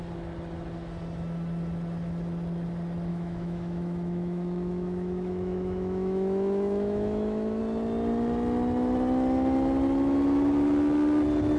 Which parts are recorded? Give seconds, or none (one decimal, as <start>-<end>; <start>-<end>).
0.0-3.1; 7.6-11.6

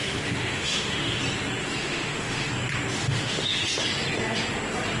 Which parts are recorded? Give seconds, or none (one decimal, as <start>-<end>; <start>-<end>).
1.2-1.8; 2.5-3.0; 3.6-5.0

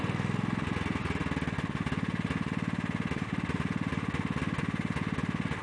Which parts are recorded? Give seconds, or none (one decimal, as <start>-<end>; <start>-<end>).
0.0-5.6